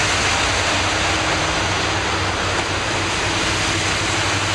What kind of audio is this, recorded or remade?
recorded